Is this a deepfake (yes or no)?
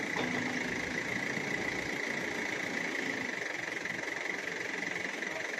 no